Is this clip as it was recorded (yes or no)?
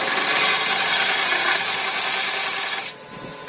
yes